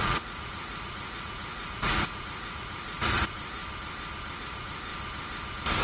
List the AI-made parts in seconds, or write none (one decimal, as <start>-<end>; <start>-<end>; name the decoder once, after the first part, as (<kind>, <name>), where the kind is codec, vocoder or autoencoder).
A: 0.0-3.6 (vocoder, Vocos); 4.4-4.9